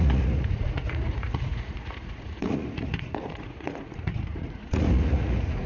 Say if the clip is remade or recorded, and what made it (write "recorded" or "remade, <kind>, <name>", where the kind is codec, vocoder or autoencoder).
remade, vocoder, Vocos